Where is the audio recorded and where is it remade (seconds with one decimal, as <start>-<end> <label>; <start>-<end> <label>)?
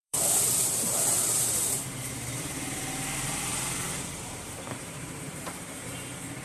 0.0-6.4 remade